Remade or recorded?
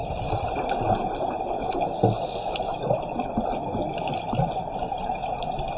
recorded